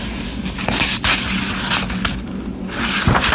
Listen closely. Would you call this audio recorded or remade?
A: recorded